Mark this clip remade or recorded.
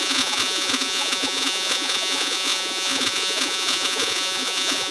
remade